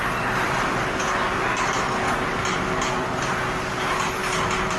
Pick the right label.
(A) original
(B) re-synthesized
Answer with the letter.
A